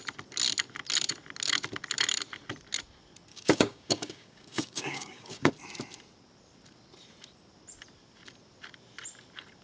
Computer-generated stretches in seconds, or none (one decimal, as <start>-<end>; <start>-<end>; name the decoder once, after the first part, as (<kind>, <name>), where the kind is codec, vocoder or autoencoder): 3.3-5.5 (codec, DAC)

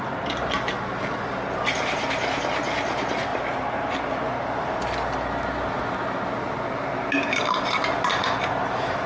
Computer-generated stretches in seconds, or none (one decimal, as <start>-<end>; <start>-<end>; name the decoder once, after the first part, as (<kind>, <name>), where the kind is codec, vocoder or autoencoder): none

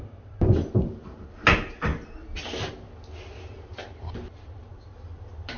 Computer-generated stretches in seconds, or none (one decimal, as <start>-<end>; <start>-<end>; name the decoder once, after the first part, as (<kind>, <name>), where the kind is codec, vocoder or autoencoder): none

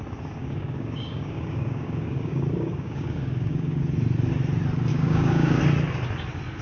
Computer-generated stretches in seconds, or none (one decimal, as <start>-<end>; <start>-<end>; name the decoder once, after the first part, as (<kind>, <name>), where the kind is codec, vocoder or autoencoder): 0.4-3.8 (codec, DAC); 4.9-5.6

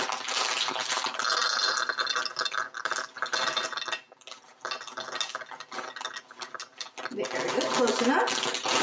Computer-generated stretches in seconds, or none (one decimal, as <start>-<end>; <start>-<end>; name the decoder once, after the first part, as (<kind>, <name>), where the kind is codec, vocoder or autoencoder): none

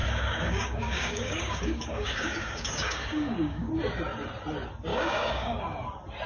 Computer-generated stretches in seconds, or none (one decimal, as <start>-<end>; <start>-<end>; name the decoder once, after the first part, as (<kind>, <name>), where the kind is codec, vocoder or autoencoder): 0.0-3.7 (codec, DAC); 4.9-5.6

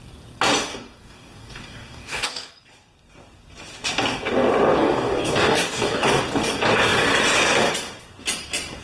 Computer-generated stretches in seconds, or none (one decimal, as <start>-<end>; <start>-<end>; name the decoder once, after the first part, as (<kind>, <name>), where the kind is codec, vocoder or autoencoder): 0.7-2.5 (codec, DAC); 4.8-6.2

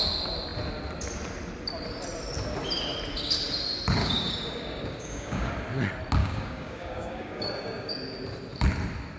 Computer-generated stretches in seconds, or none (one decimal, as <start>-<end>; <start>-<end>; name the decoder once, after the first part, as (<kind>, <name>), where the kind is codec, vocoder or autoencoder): 4.0-5.5 (codec, DAC); 6.2-7.9